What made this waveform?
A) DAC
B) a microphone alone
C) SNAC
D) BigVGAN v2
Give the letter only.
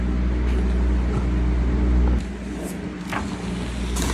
B